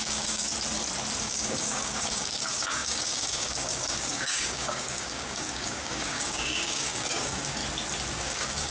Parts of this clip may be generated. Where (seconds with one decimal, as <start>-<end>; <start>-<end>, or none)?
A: 0.0-0.5; 1.2-7.6; 8.1-8.7